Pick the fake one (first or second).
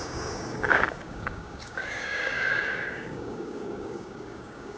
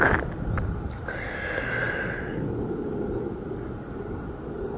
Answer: first